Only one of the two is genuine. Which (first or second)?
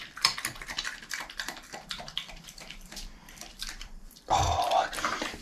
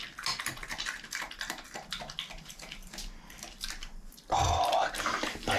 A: second